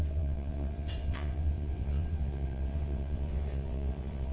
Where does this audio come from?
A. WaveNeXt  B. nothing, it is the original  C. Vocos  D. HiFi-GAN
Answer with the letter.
A